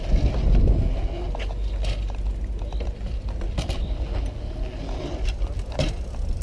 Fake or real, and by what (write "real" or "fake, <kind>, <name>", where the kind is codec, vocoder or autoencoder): real